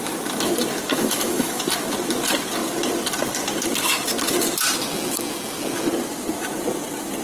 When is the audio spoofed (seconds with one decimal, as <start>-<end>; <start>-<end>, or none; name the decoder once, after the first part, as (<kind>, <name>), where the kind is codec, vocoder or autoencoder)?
0.9-1.6 (autoencoder, DAC-VAE)